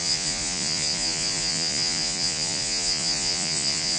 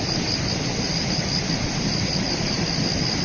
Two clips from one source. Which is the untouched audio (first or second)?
second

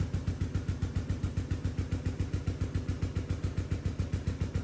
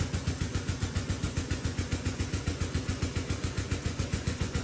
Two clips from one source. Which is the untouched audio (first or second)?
first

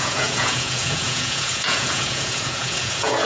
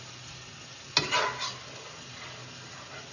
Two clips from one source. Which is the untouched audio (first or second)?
second